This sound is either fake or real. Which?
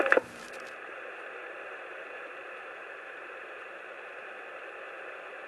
fake